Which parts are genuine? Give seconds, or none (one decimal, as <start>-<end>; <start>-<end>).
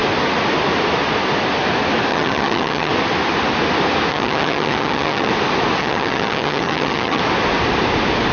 0.0-2.1; 2.9-4.1; 5.3-5.8; 7.2-8.3